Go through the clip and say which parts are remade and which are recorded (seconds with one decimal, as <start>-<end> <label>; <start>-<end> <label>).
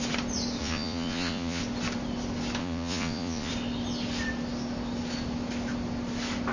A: 0.0-0.6 recorded; 0.6-1.6 remade; 1.6-2.6 recorded; 2.6-3.5 remade; 3.5-6.5 recorded